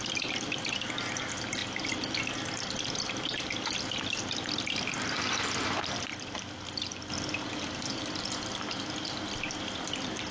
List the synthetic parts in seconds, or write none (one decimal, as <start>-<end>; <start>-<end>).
0.0-1.6; 4.9-10.3